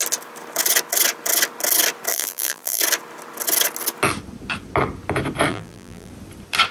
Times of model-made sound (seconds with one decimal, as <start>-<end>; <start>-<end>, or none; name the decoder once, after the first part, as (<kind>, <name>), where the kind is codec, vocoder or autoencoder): 2.1-2.8 (vocoder, BigVGAN v2); 5.5-6.1